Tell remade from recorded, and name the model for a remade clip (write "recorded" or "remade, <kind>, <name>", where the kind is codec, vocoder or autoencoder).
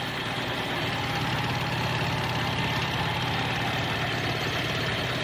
recorded